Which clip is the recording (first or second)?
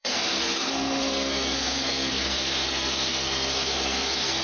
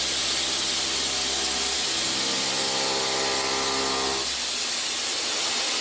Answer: second